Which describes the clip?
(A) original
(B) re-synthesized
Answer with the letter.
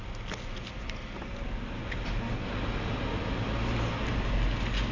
A